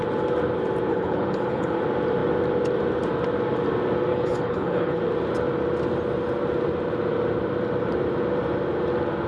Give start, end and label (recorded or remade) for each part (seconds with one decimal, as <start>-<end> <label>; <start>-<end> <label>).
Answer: 0.0-0.9 recorded; 0.9-1.8 remade; 1.8-4.1 recorded; 4.1-5.0 remade; 5.0-9.3 recorded